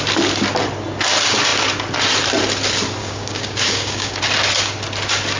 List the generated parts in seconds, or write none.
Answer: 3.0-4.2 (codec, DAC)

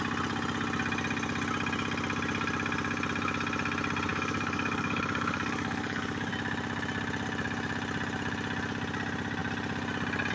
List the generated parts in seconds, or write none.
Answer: 4.1-6.3 (codec, DAC)

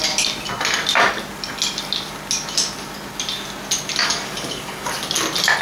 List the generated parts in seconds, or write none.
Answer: 4.0-4.9 (codec, DAC)

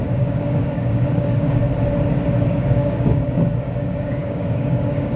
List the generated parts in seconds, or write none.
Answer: 0.0-1.6 (codec, DAC); 2.5-5.2

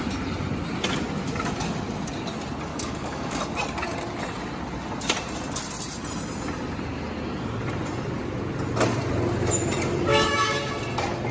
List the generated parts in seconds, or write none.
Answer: 2.7-3.4 (codec, DAC); 10.1-10.7

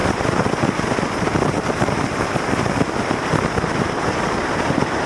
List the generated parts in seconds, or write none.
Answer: none

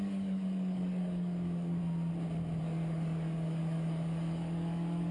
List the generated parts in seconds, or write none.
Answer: 0.0-1.8 (codec, DAC); 2.6-5.1